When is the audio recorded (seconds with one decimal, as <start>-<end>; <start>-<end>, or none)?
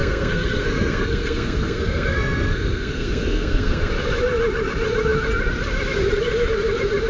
3.9-7.1